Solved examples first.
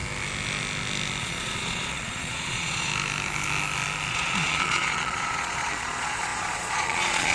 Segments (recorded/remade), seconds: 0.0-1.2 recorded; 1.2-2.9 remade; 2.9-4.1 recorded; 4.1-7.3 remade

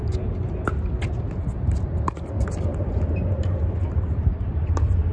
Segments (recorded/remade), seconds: 0.0-5.1 recorded

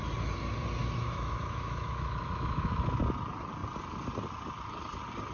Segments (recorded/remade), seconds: 0.0-0.8 recorded; 0.8-3.0 remade; 3.0-5.3 recorded

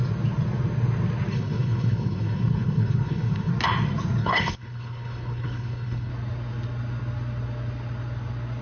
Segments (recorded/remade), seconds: 0.0-1.3 recorded; 1.3-3.5 remade; 3.5-4.2 recorded; 4.2-6.1 remade; 6.1-8.6 recorded

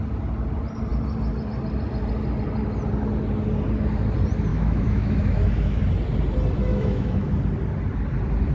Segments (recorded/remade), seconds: 0.0-4.5 recorded; 4.5-5.8 remade; 5.8-6.7 recorded; 6.7-7.4 remade; 7.4-8.5 recorded

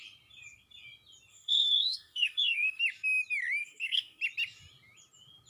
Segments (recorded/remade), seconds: 0.0-1.3 recorded; 1.3-2.8 remade; 2.8-3.6 recorded; 3.6-4.2 remade; 4.2-5.5 recorded

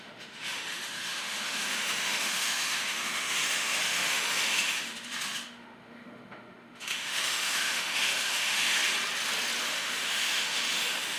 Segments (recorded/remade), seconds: 0.0-8.8 remade; 8.8-9.6 recorded; 9.6-11.2 remade

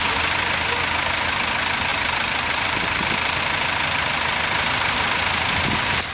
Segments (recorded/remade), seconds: 0.0-1.9 recorded; 1.9-3.4 remade; 3.4-6.1 recorded